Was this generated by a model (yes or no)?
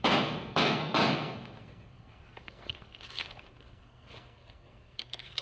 yes